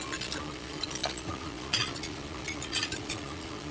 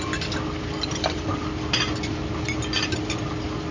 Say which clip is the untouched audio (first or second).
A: second